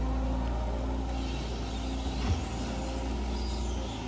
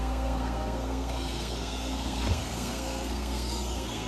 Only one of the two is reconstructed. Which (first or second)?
second